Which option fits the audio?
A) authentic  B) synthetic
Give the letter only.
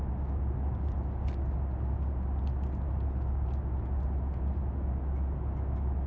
A